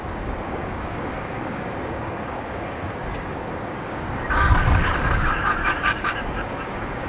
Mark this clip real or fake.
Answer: fake